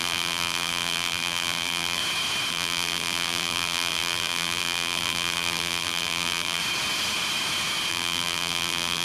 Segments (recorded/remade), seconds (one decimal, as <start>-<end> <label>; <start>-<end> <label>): 0.0-2.0 remade; 2.0-2.5 recorded; 2.5-6.6 remade; 6.6-7.9 recorded; 7.9-9.0 remade